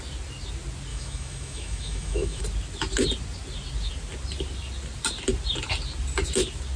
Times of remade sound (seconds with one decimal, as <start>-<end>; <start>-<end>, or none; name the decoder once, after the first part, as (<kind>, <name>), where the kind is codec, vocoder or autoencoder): 0.9-2.4 (autoencoder, DAC-VAE)